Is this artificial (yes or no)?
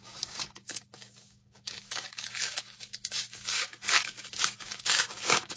yes